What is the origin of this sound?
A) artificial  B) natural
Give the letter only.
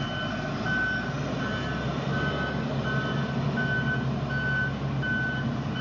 B